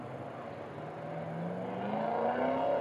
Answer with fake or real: real